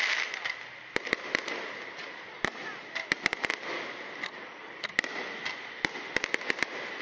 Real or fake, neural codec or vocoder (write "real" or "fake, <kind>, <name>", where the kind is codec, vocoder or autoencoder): real